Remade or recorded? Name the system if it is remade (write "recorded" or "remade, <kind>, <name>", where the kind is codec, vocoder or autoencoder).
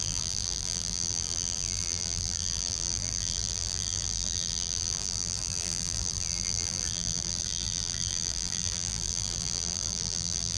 remade, vocoder, BigVGAN v2